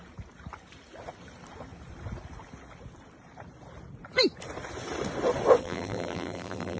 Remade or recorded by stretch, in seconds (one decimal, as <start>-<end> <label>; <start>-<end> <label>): 0.0-5.6 recorded; 5.6-6.8 remade